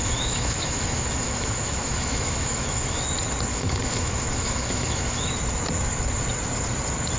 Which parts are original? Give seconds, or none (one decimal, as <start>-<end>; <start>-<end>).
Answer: 3.0-3.5; 5.3-7.2